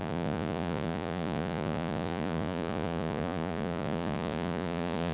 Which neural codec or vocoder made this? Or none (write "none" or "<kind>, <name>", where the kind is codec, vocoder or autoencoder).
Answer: vocoder, Vocos